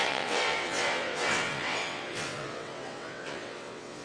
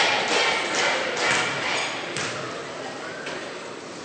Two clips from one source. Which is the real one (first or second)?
second